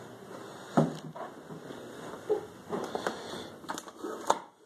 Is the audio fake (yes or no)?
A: no